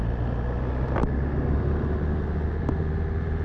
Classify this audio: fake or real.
real